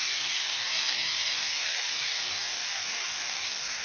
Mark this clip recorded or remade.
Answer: remade